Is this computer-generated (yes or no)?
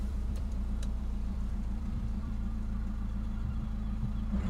yes